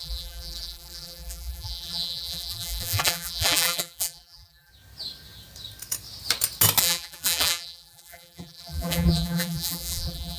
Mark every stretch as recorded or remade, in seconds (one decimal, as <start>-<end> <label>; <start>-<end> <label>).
0.0-4.7 remade; 4.7-6.8 recorded; 6.8-10.4 remade